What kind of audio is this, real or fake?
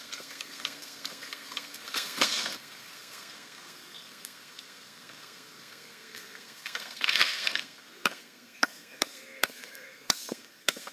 fake